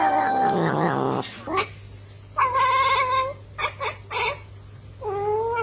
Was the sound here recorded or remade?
recorded